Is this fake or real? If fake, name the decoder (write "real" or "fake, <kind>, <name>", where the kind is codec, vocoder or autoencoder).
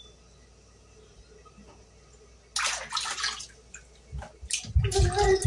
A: real